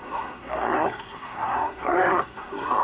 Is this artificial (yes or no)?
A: yes